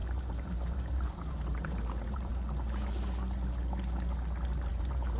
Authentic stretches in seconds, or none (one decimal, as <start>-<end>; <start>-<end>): 2.3-4.7